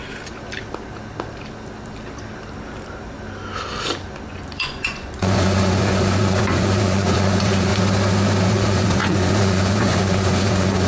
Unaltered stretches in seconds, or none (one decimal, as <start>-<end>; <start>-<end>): 0.0-4.3; 7.7-8.5